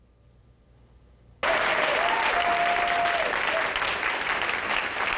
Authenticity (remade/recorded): recorded